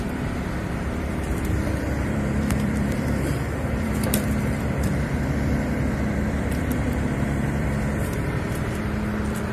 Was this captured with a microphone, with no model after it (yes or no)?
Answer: no